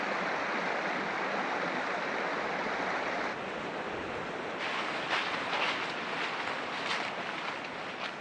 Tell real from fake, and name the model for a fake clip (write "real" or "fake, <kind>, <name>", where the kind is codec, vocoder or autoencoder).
real